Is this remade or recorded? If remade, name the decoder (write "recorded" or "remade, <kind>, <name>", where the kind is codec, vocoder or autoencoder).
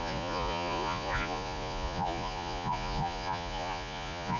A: remade, vocoder, Vocos